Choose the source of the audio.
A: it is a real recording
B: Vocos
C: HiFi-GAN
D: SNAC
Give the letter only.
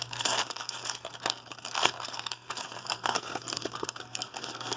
D